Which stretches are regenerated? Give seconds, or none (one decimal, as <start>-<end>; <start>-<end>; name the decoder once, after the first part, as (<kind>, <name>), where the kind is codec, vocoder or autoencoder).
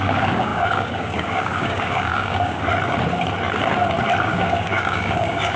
0.0-2.7 (codec, DAC); 4.2-5.6